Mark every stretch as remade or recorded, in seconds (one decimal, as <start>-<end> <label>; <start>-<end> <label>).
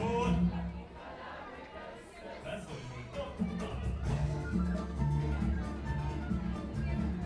0.0-4.1 recorded; 4.1-5.2 remade; 5.2-7.3 recorded